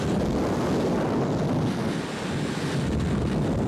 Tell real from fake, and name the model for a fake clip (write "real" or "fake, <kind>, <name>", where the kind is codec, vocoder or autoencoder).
real